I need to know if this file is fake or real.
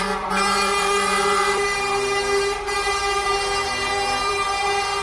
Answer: fake